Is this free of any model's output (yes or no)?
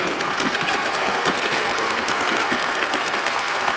no